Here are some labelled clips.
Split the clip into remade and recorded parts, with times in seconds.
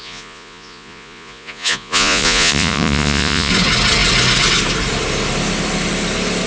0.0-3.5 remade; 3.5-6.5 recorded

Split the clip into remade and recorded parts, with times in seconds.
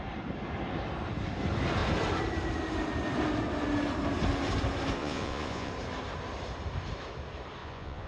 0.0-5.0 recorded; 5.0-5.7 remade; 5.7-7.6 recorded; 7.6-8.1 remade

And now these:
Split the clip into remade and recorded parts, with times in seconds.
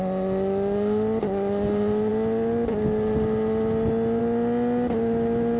0.0-5.6 recorded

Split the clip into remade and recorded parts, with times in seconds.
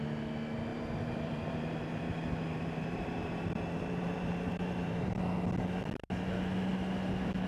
0.0-0.7 recorded; 0.7-5.2 remade; 5.2-7.5 recorded